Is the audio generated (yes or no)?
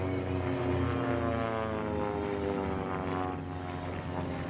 no